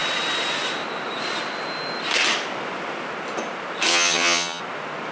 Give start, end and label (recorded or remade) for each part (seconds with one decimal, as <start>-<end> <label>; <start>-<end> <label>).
0.0-3.9 recorded; 3.9-4.6 remade; 4.6-5.1 recorded